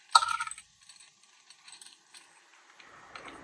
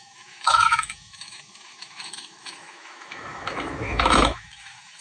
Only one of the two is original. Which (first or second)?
first